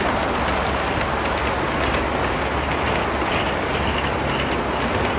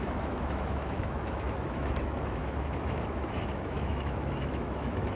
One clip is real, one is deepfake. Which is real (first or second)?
first